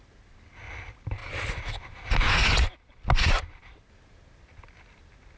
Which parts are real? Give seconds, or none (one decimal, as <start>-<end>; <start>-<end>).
0.0-5.4